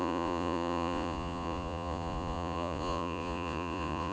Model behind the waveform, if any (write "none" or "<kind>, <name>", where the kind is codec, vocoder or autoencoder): vocoder, Vocos